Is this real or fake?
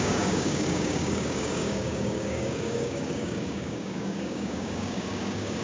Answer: fake